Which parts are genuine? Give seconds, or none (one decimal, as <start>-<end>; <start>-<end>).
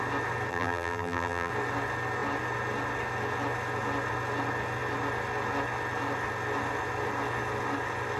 0.0-0.5; 1.5-8.2